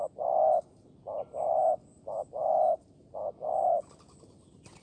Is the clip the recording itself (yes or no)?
yes